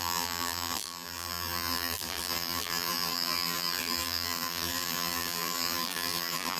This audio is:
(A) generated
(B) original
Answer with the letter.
A